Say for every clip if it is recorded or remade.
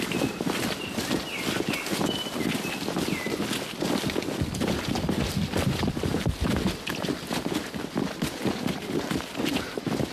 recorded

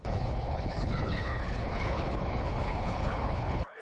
remade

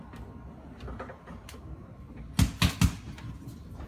recorded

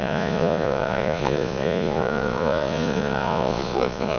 remade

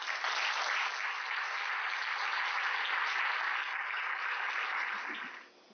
recorded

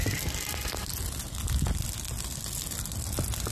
recorded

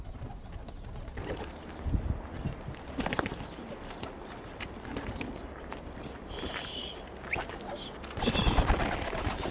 recorded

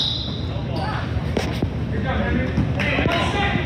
recorded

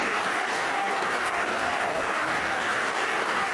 remade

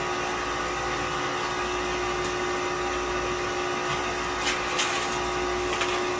recorded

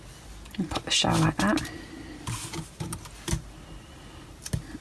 recorded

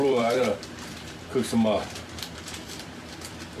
remade